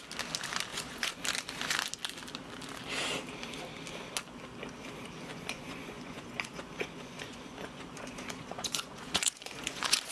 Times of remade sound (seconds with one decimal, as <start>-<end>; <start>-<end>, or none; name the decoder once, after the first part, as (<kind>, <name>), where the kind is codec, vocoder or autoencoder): 0.7-1.2 (vocoder, Vocos); 5.3-10.1